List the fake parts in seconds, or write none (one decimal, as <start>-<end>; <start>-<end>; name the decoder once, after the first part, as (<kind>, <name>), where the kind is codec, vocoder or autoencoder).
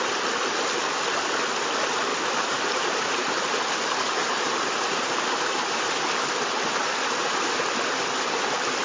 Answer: 2.1-3.0 (vocoder, BigVGAN v2); 4.2-6.0; 6.8-7.3